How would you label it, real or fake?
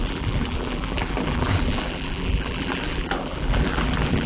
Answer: fake